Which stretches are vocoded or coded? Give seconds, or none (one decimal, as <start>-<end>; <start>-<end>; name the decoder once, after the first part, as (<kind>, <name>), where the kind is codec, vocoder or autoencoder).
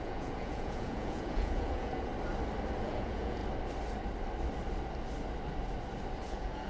0.0-2.1 (vocoder, Vocos); 2.8-3.4; 6.2-6.7